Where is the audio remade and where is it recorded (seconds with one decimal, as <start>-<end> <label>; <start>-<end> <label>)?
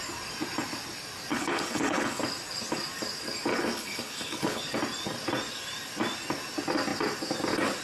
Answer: 0.0-1.3 recorded; 1.3-2.2 remade; 2.2-3.5 recorded; 3.5-4.6 remade; 4.6-7.8 recorded